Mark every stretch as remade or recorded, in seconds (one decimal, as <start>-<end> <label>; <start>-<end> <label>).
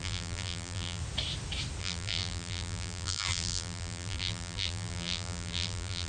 0.0-1.0 remade; 1.0-1.8 recorded; 1.8-6.1 remade